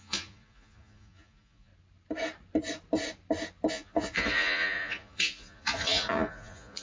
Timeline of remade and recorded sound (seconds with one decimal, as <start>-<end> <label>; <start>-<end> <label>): 0.0-1.7 remade; 1.7-3.7 recorded; 3.7-6.8 remade